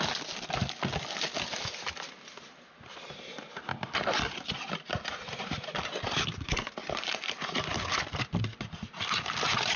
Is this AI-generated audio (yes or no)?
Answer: no